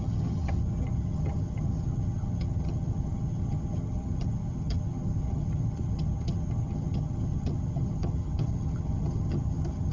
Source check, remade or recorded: remade